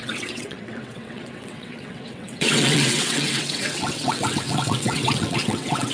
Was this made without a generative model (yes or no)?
no